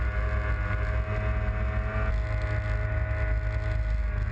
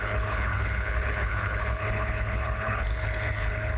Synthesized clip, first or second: second